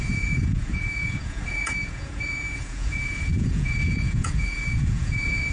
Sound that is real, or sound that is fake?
fake